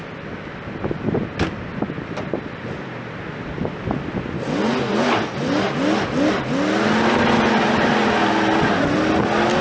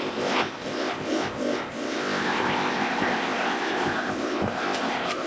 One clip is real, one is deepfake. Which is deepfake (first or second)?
second